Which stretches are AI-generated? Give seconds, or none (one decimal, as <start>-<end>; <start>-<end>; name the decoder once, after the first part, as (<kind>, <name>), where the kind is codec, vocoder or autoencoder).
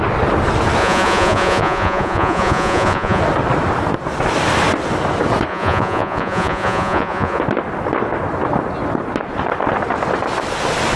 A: 0.8-3.2 (vocoder, Vocos); 5.5-7.4